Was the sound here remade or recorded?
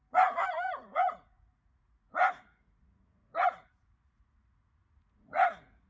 remade